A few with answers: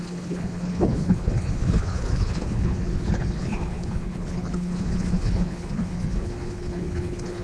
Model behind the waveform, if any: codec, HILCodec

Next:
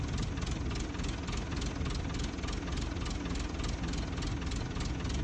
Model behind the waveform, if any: none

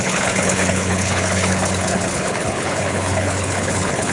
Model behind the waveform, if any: codec, HILCodec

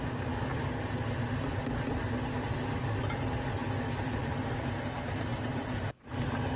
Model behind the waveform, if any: none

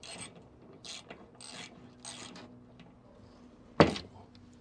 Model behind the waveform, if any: none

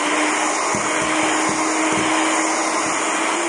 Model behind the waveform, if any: none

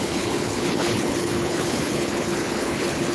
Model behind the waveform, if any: codec, HILCodec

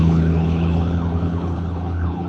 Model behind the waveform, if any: codec, HILCodec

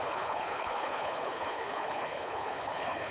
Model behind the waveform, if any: codec, HILCodec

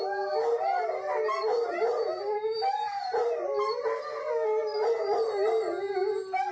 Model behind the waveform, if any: none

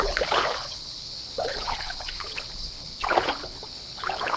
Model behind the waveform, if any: codec, HILCodec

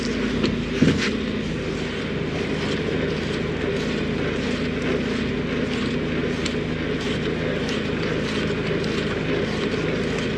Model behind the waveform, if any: none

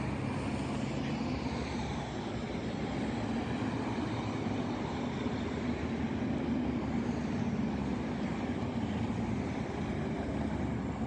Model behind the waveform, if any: none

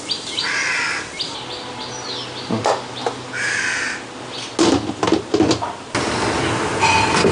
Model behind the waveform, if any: none